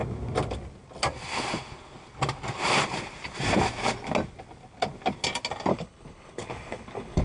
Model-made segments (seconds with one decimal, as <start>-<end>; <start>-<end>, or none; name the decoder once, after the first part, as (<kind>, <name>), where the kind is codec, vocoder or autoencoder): 5.7-7.2 (codec, HILCodec)